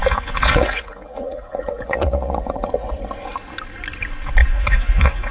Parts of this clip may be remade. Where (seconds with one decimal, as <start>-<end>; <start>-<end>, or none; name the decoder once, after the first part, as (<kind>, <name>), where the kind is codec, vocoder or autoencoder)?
0.0-2.9 (vocoder, Vocos); 4.4-5.3